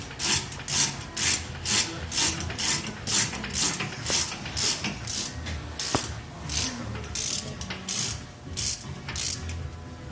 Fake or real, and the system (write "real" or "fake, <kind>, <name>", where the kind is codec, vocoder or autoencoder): real